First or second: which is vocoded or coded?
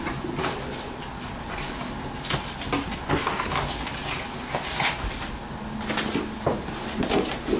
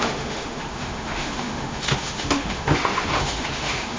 second